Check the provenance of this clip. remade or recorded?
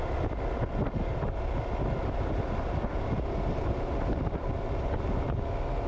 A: recorded